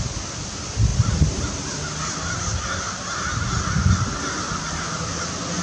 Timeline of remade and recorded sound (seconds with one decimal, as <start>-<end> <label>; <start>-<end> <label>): 0.0-5.6 recorded